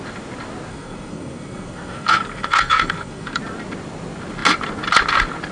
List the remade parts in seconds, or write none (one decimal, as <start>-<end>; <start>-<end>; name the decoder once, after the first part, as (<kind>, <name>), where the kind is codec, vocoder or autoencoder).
0.7-3.4 (codec, SNAC)